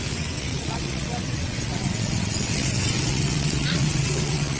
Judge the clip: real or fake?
fake